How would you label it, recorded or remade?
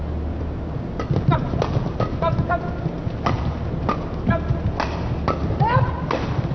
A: recorded